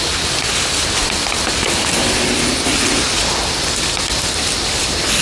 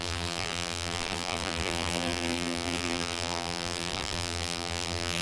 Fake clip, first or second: second